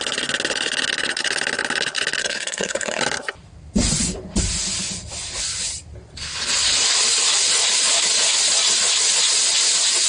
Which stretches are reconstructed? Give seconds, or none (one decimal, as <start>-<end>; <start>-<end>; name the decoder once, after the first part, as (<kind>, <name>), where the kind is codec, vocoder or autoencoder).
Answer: 2.2-3.0 (codec, SNAC)